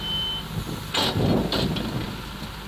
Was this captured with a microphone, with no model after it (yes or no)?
yes